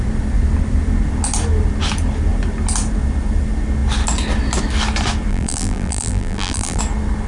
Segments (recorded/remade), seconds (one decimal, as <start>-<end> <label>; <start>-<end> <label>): 0.0-5.3 recorded; 5.3-6.8 remade; 6.8-7.3 recorded